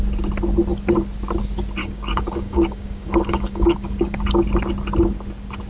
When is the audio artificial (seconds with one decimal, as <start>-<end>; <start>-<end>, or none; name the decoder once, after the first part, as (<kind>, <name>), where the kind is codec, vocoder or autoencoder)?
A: 1.8-4.2 (codec, DAC)